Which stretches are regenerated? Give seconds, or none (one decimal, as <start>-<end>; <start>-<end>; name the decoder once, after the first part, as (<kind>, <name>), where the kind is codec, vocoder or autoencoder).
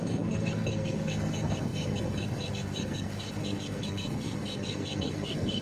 0.0-5.6 (codec, SNAC)